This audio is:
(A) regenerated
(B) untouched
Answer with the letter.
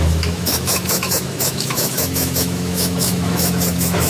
A